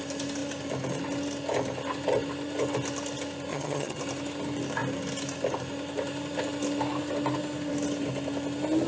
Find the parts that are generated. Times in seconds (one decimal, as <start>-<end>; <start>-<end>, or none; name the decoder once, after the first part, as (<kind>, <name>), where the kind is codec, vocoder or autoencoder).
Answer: 3.5-4.0 (vocoder, HiFi-GAN)